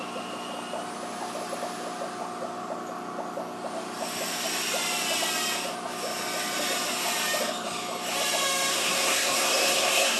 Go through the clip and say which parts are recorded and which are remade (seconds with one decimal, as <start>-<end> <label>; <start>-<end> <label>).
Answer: 0.0-8.7 recorded; 8.7-10.2 remade